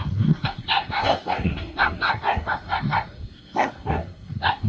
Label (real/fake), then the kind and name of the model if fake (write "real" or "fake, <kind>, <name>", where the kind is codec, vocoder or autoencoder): fake, codec, SNAC